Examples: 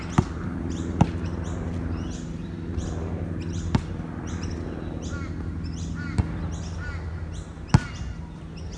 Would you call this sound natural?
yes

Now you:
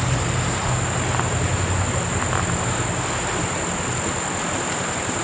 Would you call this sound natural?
yes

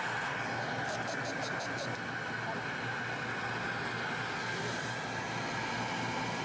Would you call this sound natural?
yes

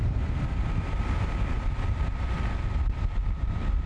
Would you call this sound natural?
yes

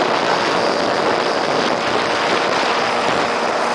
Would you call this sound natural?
yes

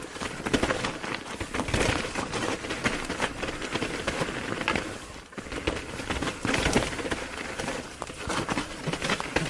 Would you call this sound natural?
yes